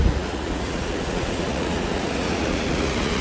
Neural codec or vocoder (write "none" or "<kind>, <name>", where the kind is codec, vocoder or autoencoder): vocoder, Vocos